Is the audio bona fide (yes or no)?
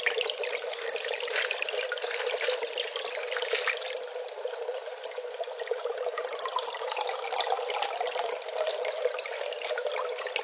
yes